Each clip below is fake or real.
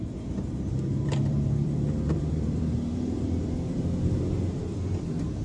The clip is fake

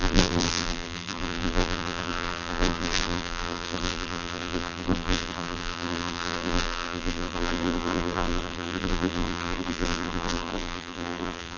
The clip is fake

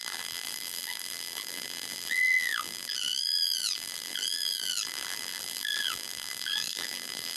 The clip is fake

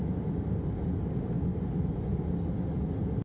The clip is real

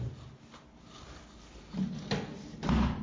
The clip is real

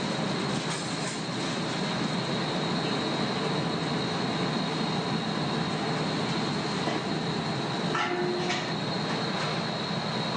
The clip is real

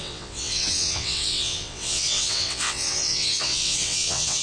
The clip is fake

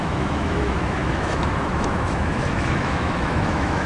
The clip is fake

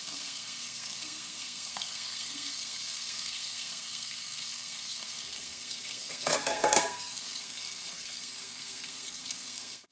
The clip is fake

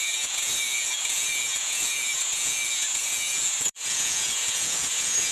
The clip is fake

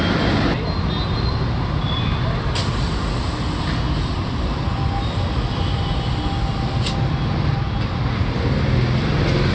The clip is real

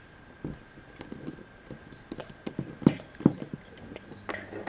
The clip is real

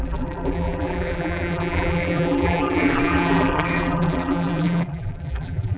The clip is fake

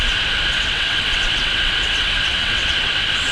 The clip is fake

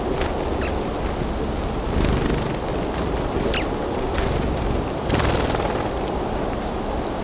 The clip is real